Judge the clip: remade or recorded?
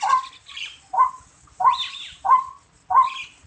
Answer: recorded